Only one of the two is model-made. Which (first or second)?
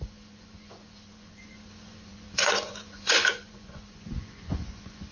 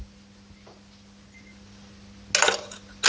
first